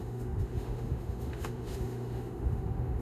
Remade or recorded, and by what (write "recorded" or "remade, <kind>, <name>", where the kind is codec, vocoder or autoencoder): remade, autoencoder, DAC-VAE